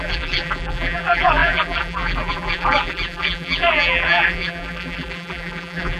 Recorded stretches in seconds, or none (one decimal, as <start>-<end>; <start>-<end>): none

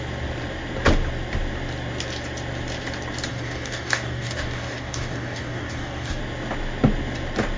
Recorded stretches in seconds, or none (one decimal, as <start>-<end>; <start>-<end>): 0.0-3.3; 6.2-7.6

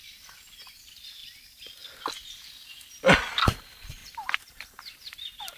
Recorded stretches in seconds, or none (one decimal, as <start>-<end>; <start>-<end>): 0.0-4.0

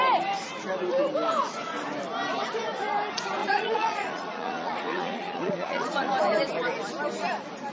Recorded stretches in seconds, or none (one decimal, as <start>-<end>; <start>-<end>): 0.0-3.4; 6.1-7.7

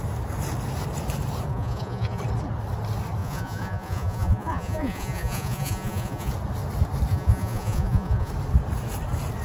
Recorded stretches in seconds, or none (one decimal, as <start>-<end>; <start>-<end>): 0.0-1.5; 2.2-3.2; 6.3-7.1; 8.3-9.4